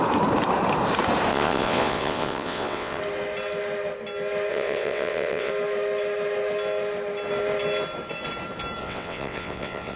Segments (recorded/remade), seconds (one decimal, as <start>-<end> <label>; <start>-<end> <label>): 0.0-1.3 recorded; 1.3-3.0 remade; 3.0-4.5 recorded; 4.5-5.5 remade; 5.5-8.8 recorded; 8.8-10.0 remade